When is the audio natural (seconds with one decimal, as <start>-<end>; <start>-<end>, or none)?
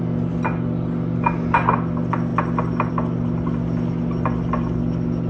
0.0-5.3